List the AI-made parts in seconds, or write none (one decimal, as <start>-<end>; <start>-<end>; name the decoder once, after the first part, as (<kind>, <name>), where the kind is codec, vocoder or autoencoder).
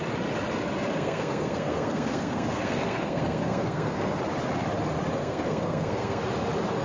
0.9-4.2 (codec, SNAC); 5.2-6.2